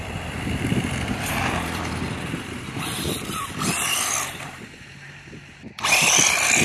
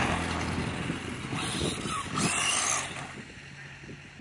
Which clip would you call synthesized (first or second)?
first